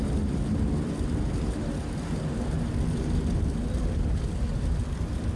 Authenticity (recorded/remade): recorded